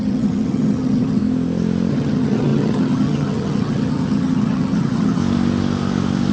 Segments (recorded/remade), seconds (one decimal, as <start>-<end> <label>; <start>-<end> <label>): 0.0-1.2 remade; 1.2-1.9 recorded; 1.9-5.2 remade; 5.2-6.3 recorded